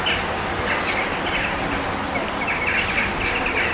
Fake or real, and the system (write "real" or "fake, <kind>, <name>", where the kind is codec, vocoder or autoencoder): real